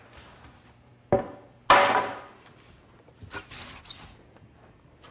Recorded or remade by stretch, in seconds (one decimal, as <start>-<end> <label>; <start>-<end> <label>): 0.0-5.1 recorded